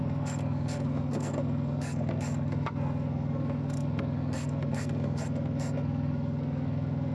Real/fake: fake